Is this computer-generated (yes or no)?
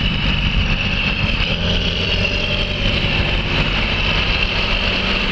yes